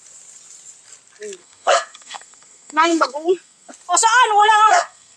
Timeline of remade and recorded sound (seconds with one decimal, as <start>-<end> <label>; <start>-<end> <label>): 0.0-1.4 recorded; 1.4-3.7 remade; 3.7-4.4 recorded; 4.4-5.2 remade